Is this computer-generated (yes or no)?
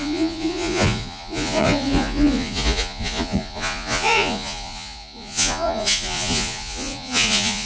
yes